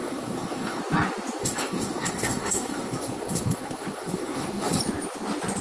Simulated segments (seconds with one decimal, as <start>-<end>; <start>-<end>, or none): 0.0-0.8; 1.4-4.8